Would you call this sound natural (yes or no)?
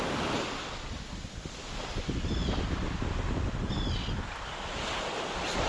yes